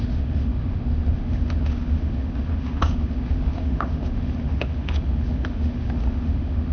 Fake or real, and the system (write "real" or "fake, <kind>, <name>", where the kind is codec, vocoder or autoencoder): fake, autoencoder, DAC-VAE